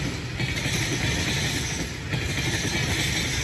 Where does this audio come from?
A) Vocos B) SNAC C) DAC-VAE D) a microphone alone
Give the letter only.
D